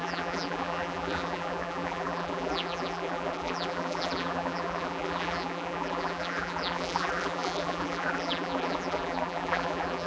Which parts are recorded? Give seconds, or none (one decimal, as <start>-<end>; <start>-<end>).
none